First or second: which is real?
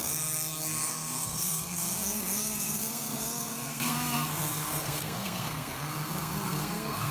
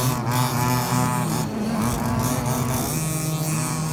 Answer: second